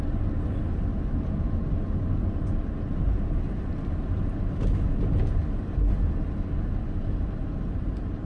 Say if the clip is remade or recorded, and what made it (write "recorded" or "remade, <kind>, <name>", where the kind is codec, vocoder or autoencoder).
recorded